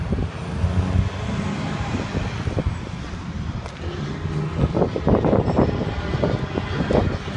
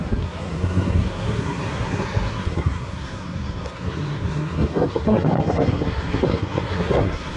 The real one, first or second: first